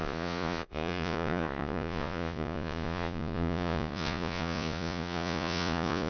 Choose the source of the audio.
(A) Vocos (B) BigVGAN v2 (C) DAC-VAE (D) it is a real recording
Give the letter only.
A